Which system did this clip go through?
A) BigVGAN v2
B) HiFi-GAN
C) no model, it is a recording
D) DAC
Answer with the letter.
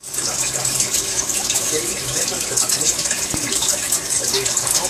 D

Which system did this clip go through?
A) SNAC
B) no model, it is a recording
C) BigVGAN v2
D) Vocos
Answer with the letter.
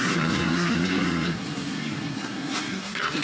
A